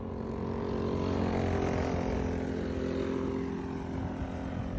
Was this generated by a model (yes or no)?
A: no